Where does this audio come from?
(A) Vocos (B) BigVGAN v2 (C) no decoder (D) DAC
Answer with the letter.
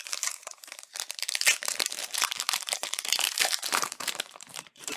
B